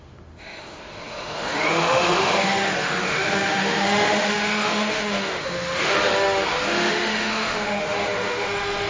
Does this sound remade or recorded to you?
remade